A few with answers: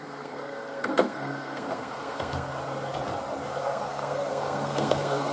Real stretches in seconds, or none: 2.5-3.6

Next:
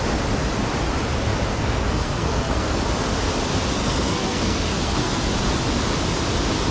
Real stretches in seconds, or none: 0.0-1.5; 2.8-3.8; 5.3-6.7

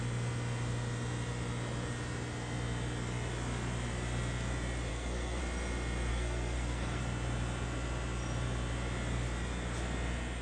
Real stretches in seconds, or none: 0.0-4.9; 5.4-6.1; 7.0-10.4

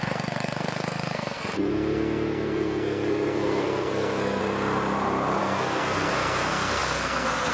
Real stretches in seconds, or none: 4.4-5.4

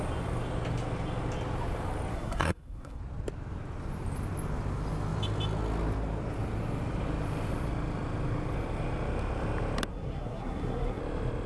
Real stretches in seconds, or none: 0.0-2.1; 3.0-9.9; 11.0-11.5

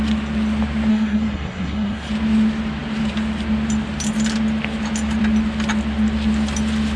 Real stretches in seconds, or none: 0.0-0.9; 2.1-7.0

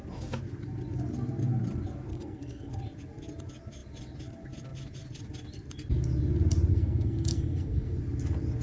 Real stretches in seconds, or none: 0.0-2.1; 2.7-6.7; 8.0-8.6

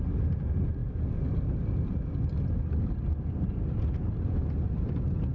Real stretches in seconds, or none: 0.0-5.3